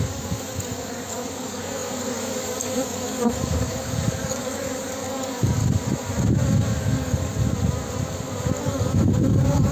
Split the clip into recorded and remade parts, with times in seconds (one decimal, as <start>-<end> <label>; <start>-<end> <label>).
0.0-5.6 remade; 5.6-6.8 recorded; 6.8-7.3 remade; 7.3-8.6 recorded; 8.6-9.7 remade